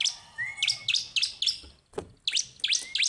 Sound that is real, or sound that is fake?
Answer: real